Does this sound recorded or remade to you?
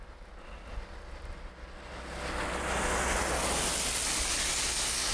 recorded